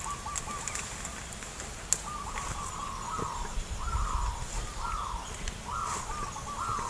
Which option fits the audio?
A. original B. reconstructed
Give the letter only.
A